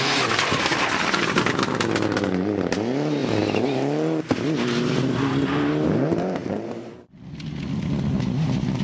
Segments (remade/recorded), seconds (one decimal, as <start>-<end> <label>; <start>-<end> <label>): 0.0-8.8 recorded